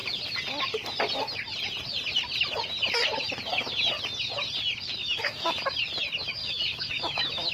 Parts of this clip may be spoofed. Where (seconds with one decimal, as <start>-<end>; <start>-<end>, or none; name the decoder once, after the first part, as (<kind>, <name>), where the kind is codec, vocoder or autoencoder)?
5.0-5.8 (autoencoder, DAC-VAE); 6.4-7.5